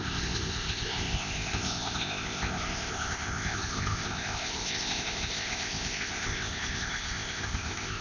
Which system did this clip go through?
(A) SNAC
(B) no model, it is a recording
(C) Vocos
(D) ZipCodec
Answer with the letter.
D